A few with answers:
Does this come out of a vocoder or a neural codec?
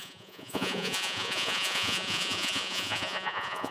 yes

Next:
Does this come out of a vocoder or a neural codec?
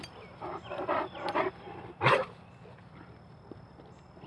no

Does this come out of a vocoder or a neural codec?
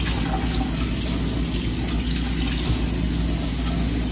no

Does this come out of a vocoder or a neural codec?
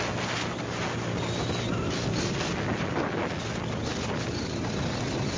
no